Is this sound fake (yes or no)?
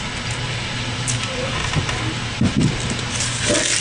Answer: no